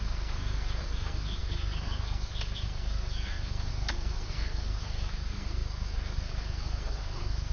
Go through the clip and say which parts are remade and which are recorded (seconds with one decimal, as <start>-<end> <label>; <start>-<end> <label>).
0.0-7.5 remade